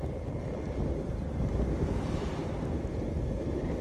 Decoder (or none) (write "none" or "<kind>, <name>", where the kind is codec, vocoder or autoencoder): none